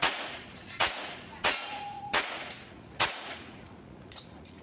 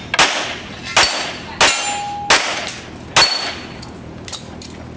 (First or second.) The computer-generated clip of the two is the first